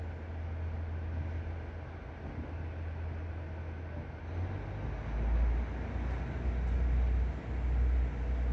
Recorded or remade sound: recorded